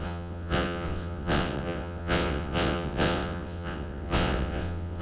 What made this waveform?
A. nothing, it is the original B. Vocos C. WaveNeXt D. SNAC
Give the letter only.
C